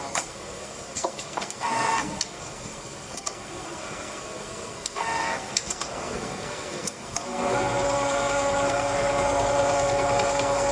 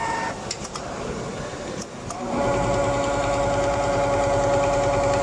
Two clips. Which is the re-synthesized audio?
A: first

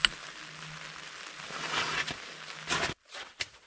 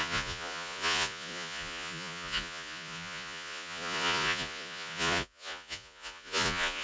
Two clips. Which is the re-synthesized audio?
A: second